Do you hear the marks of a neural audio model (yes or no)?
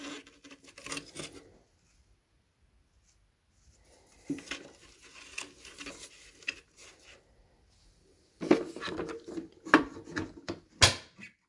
no